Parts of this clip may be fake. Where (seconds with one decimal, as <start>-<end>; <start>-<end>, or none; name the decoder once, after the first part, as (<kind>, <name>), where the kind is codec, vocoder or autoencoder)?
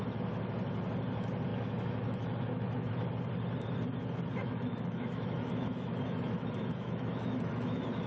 1.5-2.9 (autoencoder, DAC-VAE); 4.4-8.1